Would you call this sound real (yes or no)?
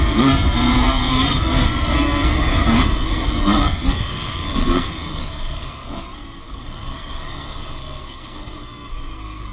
no